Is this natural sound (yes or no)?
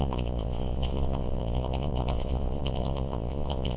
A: no